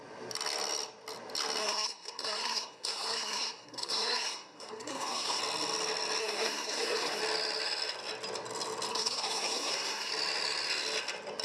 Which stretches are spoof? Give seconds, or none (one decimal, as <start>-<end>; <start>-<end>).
1.6-5.4; 6.2-7.2; 8.9-10.1